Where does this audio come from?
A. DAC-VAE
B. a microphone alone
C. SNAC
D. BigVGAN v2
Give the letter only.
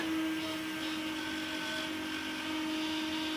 B